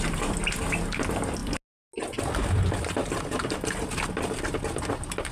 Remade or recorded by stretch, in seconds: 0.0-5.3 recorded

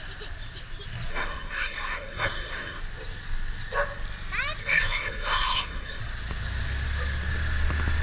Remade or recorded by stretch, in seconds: 0.0-1.1 recorded; 1.1-2.8 remade; 2.8-4.6 recorded; 4.6-6.0 remade; 6.0-8.0 recorded

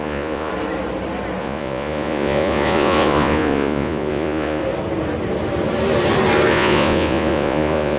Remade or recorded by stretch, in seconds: 0.0-0.5 remade; 0.5-1.4 recorded; 1.4-4.6 remade; 4.6-6.5 recorded; 6.5-8.0 remade

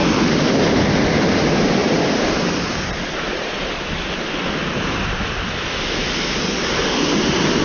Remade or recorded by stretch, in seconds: 0.0-0.7 remade; 0.7-1.8 recorded; 1.8-6.1 remade; 6.1-7.6 recorded